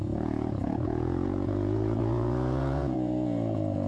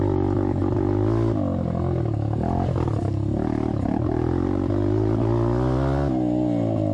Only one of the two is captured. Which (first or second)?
second